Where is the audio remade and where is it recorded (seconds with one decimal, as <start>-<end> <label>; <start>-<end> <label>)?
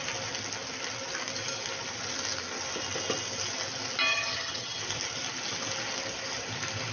0.0-4.1 recorded; 4.1-4.8 remade; 4.8-6.9 recorded